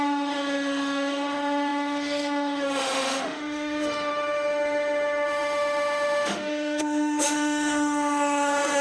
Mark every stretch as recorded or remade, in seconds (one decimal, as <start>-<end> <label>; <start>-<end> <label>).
0.0-8.8 remade